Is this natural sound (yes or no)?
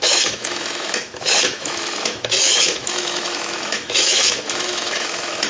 no